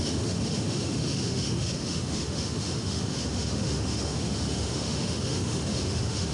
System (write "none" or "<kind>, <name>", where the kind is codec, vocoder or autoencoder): autoencoder, DAC-VAE